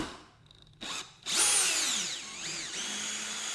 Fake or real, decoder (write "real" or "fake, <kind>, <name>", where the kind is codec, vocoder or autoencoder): real